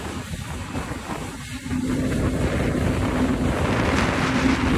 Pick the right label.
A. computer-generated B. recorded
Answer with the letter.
A